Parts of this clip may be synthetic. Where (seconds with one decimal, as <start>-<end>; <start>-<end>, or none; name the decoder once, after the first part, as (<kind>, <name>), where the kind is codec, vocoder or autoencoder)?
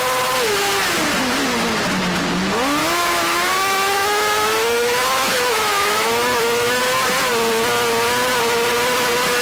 2.8-6.8 (autoencoder, DAC-VAE)